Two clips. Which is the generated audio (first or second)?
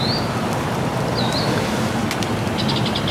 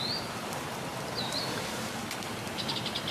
second